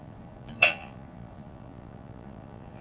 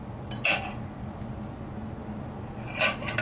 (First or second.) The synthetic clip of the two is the first